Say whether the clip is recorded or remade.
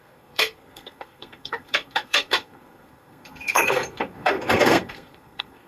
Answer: remade